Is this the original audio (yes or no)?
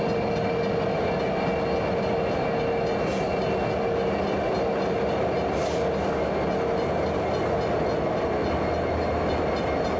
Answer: yes